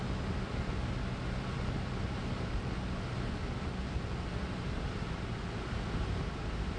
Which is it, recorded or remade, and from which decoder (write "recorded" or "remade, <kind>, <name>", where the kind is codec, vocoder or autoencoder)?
recorded